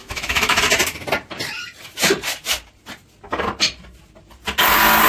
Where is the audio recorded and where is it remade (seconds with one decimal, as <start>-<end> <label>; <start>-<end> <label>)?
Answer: 0.0-0.6 remade; 0.6-5.1 recorded